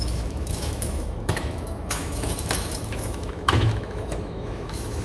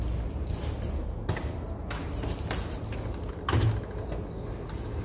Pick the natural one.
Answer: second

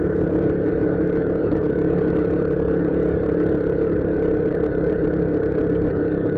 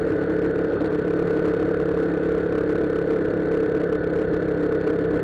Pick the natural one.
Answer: second